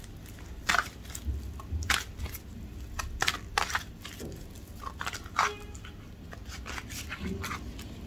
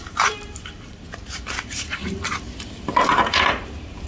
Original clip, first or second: first